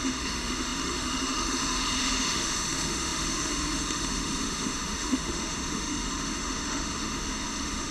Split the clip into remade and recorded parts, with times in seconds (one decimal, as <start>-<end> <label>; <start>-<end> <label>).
0.0-7.9 remade